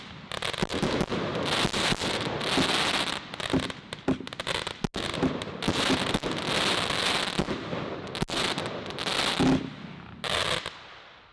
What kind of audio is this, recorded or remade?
recorded